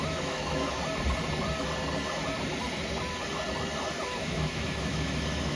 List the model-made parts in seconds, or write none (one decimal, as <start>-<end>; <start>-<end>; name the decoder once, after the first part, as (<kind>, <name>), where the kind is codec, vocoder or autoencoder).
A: 0.0-0.8 (autoencoder, DAC-VAE); 4.2-5.6